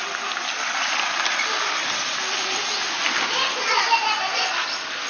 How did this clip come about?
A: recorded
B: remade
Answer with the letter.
A